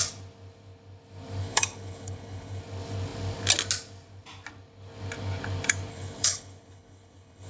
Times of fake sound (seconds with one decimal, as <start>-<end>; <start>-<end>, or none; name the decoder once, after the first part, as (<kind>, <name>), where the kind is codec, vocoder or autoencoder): 1.4-2.6 (codec, HILCodec); 5.9-7.5